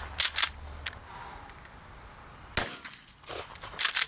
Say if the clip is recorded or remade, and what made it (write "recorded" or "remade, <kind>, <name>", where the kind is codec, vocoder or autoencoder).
recorded